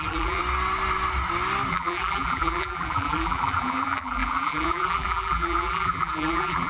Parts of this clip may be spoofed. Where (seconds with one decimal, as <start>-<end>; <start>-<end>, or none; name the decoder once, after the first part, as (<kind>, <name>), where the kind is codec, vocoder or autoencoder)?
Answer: 0.0-0.4 (vocoder, BigVGAN v2); 1.7-6.7